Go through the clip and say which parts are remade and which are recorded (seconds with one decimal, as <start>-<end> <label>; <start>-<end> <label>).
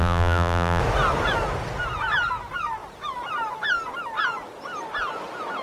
0.0-0.8 remade; 0.8-5.6 recorded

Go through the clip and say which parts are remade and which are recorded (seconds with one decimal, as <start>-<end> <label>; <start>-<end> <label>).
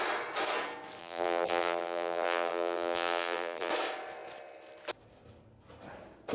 0.0-1.0 recorded; 1.0-3.7 remade; 3.7-6.3 recorded